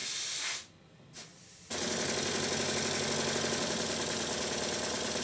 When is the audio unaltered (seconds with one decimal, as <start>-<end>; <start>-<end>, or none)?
0.0-5.2